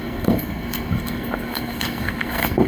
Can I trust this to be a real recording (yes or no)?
no